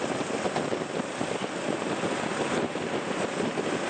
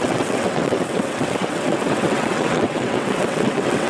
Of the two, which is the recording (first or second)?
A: first